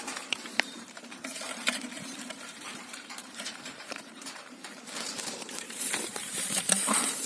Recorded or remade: remade